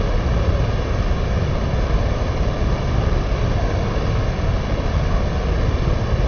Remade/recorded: recorded